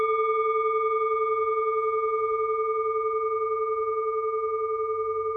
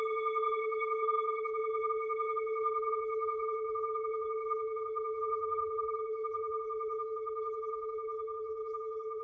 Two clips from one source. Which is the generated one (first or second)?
second